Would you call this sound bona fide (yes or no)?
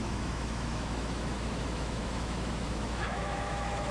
no